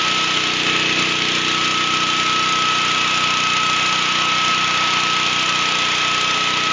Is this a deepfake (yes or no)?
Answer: no